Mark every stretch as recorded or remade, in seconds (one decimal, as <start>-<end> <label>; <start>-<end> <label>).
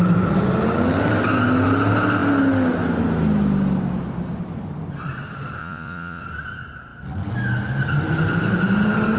0.0-5.6 recorded; 5.6-6.2 remade; 6.2-9.2 recorded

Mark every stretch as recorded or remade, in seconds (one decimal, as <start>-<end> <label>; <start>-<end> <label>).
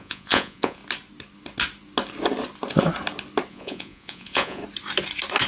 0.0-0.8 remade; 0.8-3.5 recorded; 3.5-4.6 remade; 4.6-5.5 recorded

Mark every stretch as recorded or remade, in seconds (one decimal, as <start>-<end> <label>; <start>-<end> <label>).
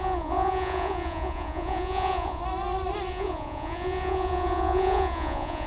0.0-2.4 remade; 2.4-3.1 recorded; 3.1-5.7 remade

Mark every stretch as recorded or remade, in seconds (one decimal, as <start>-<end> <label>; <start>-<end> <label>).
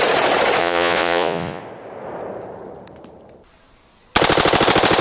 0.0-0.6 recorded; 0.6-1.6 remade; 1.6-5.0 recorded